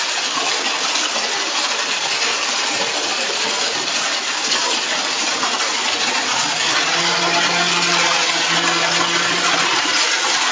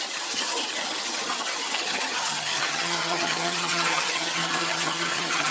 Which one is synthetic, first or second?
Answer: second